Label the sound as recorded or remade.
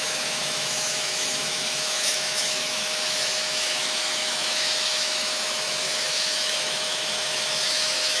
remade